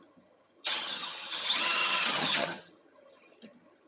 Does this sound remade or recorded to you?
remade